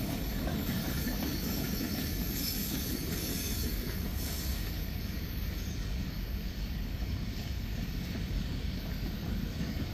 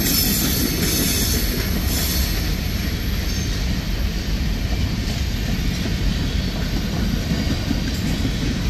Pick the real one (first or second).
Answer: second